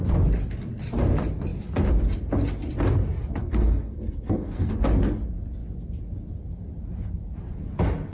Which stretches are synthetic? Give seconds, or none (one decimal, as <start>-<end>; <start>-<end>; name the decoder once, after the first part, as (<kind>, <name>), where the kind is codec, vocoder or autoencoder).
3.4-4.7 (codec, SNAC)